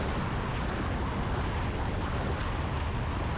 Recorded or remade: recorded